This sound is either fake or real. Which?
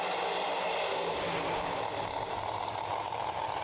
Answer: real